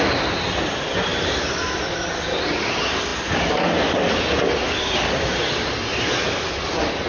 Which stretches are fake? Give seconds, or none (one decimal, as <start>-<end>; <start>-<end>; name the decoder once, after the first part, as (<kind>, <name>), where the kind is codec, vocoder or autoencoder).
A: none